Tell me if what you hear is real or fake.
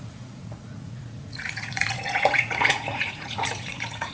fake